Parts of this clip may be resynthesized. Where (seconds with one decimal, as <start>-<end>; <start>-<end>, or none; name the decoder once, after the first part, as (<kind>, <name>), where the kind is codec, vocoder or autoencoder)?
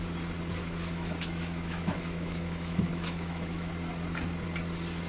0.6-3.7 (autoencoder, DAC-VAE)